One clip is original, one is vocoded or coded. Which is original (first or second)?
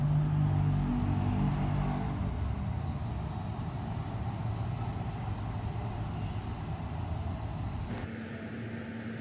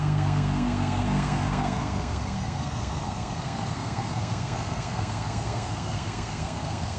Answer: first